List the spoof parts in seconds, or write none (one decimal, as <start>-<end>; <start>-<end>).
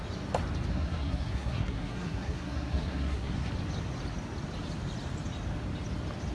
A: 0.7-3.5